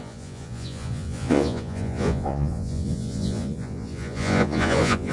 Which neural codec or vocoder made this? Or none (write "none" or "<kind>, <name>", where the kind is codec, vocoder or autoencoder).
vocoder, Vocos